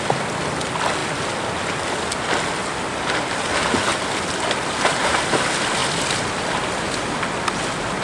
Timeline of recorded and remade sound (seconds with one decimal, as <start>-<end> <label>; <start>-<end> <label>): 0.0-3.9 recorded; 3.9-5.0 remade; 5.0-5.8 recorded; 5.8-7.2 remade; 7.2-8.0 recorded